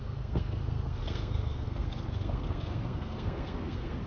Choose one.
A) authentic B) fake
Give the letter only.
B